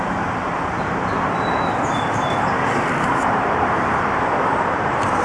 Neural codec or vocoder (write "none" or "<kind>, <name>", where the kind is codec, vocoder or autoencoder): vocoder, BigVGAN v2